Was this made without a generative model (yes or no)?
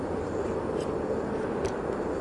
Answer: yes